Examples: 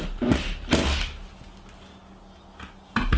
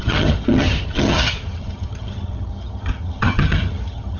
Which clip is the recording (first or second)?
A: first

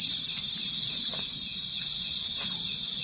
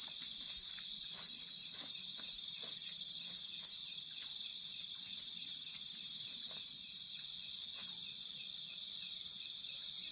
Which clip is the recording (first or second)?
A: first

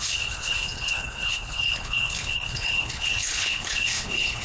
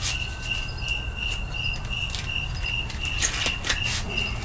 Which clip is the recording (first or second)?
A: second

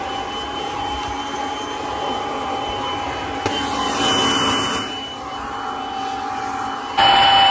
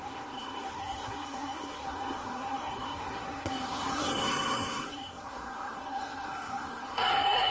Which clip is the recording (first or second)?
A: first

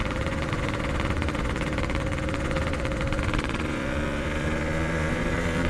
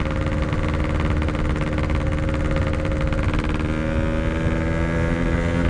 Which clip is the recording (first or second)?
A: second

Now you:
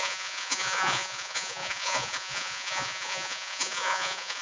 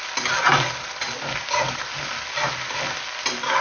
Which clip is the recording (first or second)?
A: second